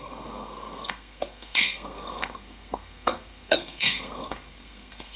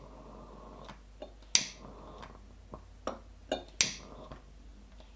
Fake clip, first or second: first